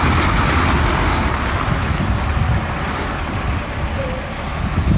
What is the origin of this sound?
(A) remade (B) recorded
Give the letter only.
B